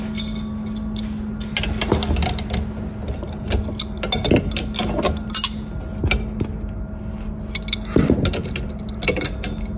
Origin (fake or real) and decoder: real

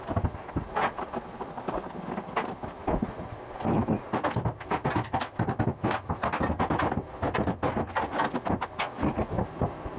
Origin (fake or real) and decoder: real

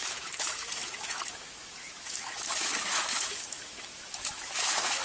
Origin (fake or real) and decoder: fake, autoencoder, DAC-VAE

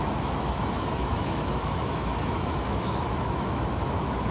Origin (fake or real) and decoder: fake, autoencoder, DAC-VAE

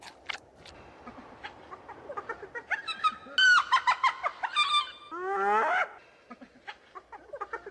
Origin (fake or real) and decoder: real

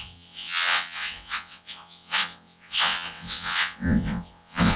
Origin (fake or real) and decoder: fake, vocoder, WaveNeXt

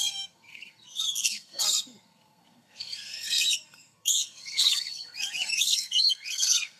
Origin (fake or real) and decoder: fake, codec, SNAC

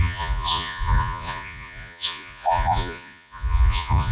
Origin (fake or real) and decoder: fake, vocoder, Vocos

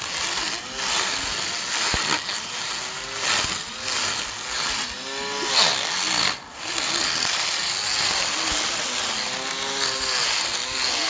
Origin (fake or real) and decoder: real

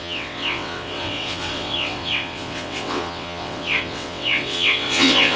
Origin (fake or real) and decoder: fake, vocoder, WaveNeXt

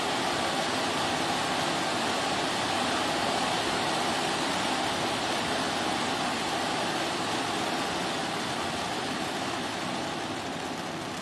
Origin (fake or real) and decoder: fake, vocoder, BigVGAN v2